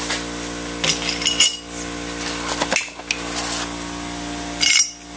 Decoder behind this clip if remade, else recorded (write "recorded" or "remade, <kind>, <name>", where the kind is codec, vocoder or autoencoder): recorded